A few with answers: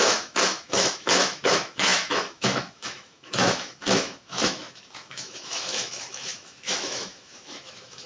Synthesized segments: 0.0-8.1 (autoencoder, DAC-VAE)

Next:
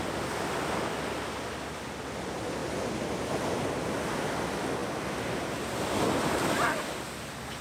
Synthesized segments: none

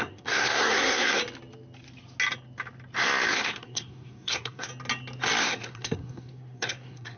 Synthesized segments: 0.0-1.2 (codec, SNAC); 3.3-4.7; 5.4-7.2

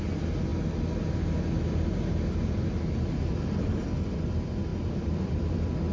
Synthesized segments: none

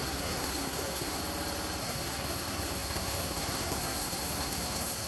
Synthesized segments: 0.0-1.2 (codec, SNAC); 1.8-5.1

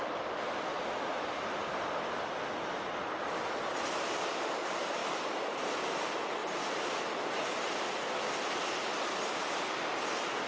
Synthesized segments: 5.0-5.7 (vocoder, BigVGAN v2); 6.4-7.1

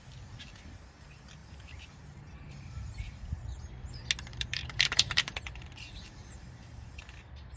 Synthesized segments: 1.4-3.7 (vocoder, BigVGAN v2); 4.3-7.0